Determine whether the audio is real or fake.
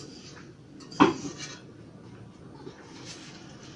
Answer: real